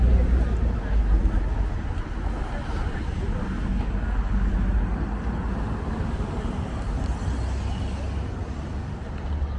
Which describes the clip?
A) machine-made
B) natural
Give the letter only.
B